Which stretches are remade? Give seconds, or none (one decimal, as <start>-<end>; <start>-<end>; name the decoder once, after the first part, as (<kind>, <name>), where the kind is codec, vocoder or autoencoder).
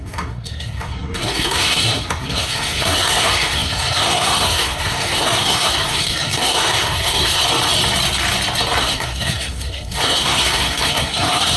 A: 0.0-7.4 (codec, SNAC); 8.8-11.6